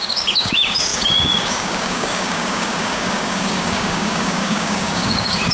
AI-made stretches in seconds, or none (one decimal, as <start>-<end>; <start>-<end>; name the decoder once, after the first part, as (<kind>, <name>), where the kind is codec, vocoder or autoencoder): 0.0-5.5 (codec, DAC)